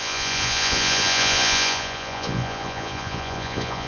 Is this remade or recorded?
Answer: remade